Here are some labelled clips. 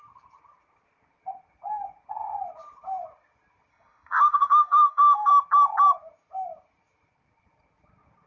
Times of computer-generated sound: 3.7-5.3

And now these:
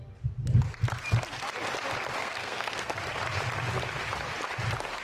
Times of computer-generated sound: 2.2-3.0